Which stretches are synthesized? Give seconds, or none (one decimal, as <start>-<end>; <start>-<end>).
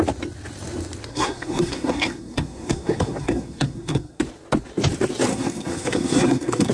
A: 1.1-4.2; 5.3-6.7